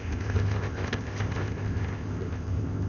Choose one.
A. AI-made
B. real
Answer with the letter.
A